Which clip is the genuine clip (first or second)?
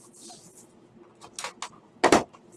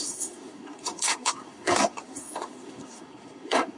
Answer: first